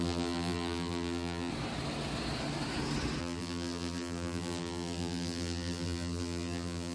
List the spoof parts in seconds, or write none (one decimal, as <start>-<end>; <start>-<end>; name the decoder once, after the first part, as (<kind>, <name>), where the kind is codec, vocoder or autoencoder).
0.0-1.5 (vocoder, BigVGAN v2); 3.2-6.9